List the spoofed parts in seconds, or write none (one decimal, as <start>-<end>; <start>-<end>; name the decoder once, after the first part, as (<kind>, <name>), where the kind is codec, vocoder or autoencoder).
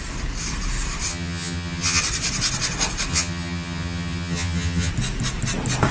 1.1-2.0 (vocoder, HiFi-GAN); 3.1-4.9